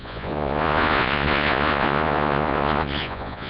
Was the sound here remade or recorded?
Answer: remade